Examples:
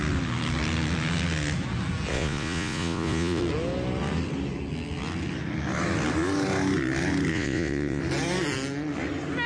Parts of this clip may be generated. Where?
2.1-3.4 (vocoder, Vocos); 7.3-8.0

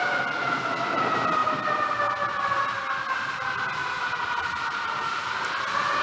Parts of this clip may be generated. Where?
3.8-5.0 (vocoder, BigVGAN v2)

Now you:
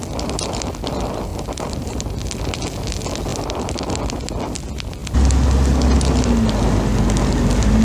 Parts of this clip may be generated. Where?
1.3-1.9 (vocoder, BigVGAN v2); 3.3-3.8

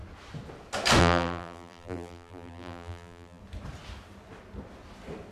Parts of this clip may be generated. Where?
1.0-3.4 (vocoder, BigVGAN v2)

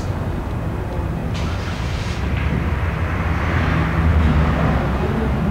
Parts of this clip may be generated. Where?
1.2-3.2 (vocoder, BigVGAN v2)

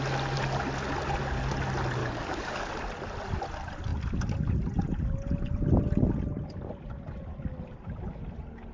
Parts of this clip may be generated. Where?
2.0-2.7 (codec, DAC)

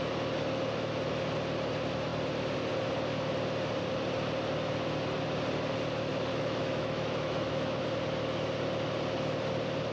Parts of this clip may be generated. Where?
6.3-7.8 (autoencoder, DAC-VAE)